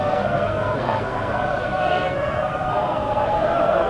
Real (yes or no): no